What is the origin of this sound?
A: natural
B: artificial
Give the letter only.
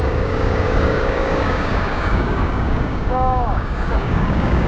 B